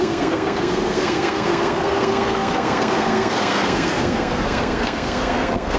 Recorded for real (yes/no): no